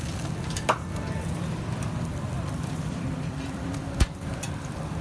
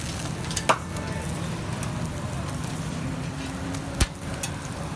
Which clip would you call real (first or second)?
second